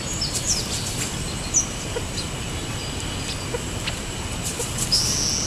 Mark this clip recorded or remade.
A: recorded